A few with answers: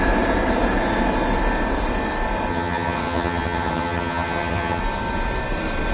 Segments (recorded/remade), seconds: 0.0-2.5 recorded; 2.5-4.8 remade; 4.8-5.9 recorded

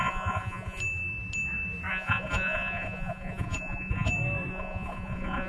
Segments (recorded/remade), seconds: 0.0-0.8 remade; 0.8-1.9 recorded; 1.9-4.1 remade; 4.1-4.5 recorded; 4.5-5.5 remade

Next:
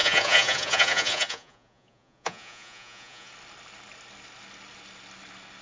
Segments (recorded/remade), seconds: 0.0-3.3 remade; 3.3-5.6 recorded

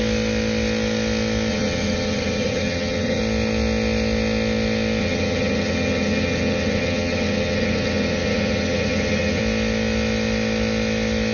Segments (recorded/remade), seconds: 0.0-1.5 recorded; 1.5-3.2 remade; 3.2-5.0 recorded; 5.0-9.4 remade; 9.4-11.3 recorded